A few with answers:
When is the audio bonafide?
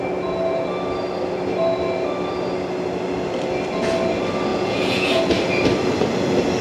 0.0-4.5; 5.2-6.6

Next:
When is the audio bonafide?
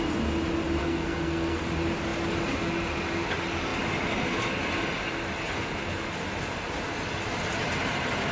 0.0-0.8; 1.6-8.3